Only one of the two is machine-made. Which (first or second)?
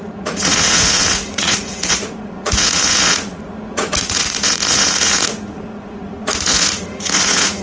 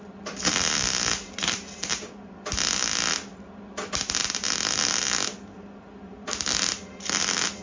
first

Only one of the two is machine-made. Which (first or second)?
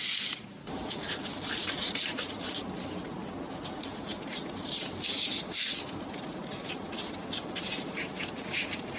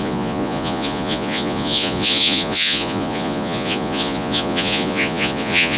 second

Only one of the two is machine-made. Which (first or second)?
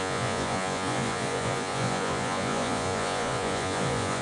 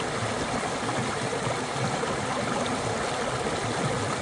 first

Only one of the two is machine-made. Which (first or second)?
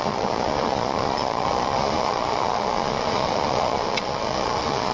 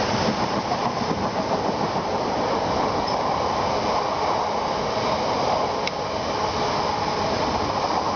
first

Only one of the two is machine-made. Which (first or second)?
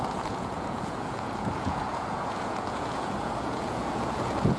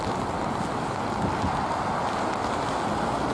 first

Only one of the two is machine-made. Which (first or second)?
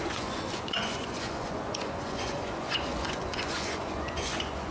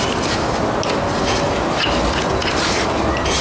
first